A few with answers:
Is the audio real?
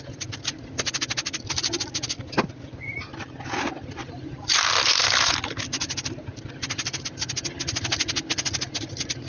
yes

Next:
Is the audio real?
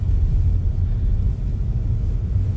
yes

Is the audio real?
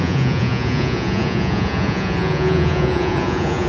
no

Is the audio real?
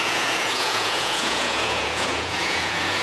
no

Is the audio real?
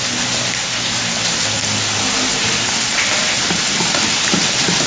yes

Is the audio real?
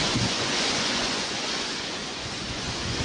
no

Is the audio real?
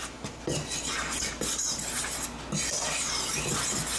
yes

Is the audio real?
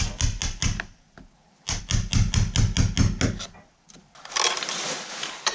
yes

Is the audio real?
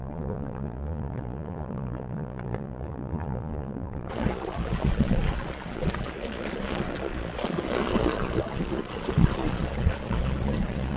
no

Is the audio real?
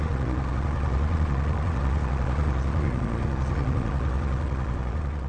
no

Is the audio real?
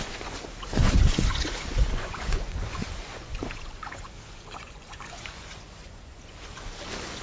no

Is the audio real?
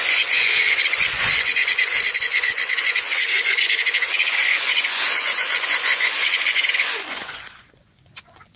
no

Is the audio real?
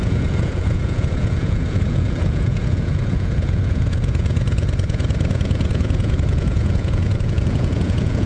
no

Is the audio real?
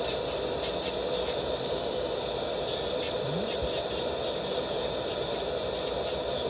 yes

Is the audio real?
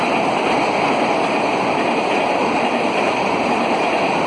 yes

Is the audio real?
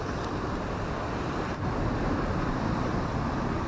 yes